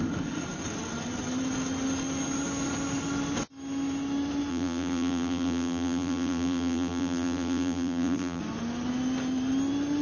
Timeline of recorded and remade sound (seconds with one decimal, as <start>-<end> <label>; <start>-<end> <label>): 0.0-4.5 recorded; 4.5-8.4 remade; 8.4-10.0 recorded